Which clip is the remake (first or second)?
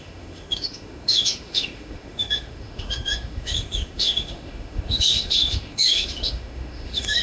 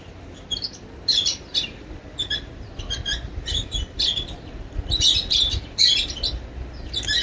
first